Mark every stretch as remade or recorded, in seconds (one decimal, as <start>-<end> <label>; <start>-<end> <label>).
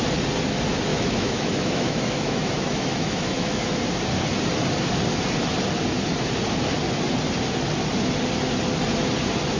0.0-0.9 recorded; 0.9-3.7 remade; 3.7-9.6 recorded